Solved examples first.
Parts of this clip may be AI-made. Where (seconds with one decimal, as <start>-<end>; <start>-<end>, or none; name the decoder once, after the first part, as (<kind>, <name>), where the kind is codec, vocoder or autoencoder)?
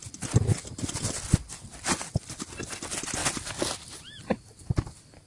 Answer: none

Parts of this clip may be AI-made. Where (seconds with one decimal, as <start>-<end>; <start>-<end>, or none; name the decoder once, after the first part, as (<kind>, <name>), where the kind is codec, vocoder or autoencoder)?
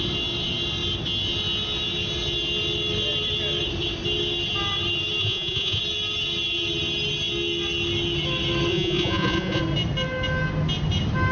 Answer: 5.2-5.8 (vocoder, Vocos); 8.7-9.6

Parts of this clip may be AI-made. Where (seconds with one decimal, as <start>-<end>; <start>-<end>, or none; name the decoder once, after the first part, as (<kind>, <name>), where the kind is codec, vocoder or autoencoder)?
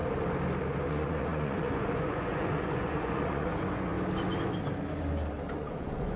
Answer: 0.9-3.9 (vocoder, Vocos); 5.5-6.2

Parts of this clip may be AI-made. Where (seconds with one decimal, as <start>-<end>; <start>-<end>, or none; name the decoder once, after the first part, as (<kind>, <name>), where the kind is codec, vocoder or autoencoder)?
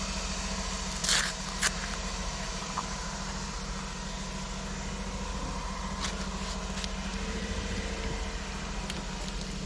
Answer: 1.0-3.5 (vocoder, BigVGAN v2); 7.1-7.8